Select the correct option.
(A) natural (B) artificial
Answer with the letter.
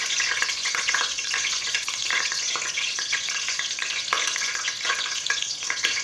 B